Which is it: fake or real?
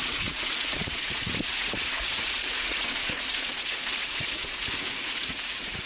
fake